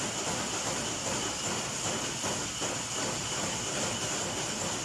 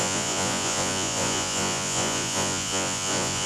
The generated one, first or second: second